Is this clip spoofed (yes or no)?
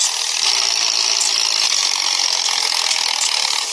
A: no